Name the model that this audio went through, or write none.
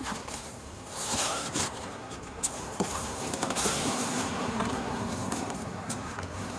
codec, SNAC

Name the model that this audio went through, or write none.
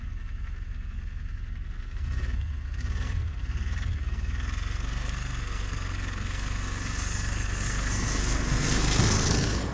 codec, SNAC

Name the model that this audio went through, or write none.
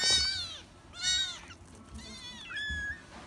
none